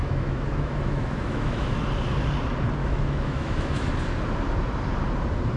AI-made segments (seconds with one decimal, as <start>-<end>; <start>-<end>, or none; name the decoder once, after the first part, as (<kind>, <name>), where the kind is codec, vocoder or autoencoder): 0.0-1.8 (autoencoder, DAC-VAE); 2.8-3.9